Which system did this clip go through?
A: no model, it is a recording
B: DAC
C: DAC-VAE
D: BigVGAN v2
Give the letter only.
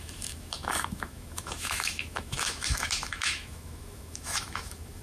C